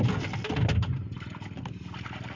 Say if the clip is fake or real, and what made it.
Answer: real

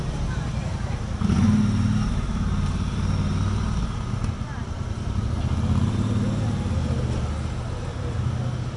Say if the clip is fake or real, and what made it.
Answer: real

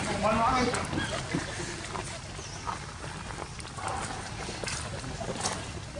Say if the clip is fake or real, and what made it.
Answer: real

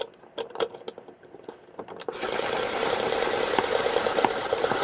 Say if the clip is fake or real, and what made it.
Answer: real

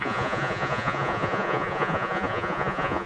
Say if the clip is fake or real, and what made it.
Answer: fake, vocoder, Vocos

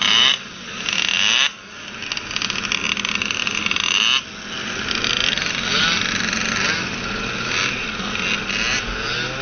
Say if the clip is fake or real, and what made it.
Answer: real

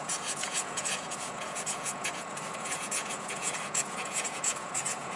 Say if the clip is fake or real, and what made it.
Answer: fake, vocoder, Vocos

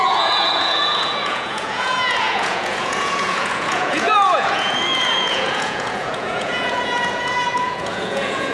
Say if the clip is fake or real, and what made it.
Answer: fake, vocoder, Vocos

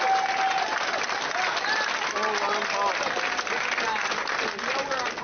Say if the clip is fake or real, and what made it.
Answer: real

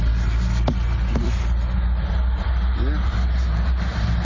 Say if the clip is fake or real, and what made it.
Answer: real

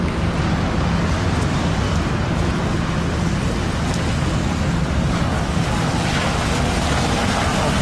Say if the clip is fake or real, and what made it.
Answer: real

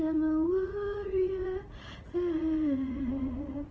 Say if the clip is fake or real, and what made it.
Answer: fake, vocoder, Vocos